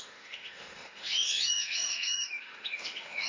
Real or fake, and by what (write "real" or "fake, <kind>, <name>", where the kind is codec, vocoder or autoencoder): fake, autoencoder, DAC-VAE